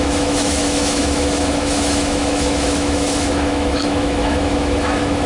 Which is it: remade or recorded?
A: remade